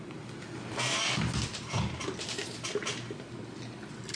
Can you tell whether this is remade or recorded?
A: recorded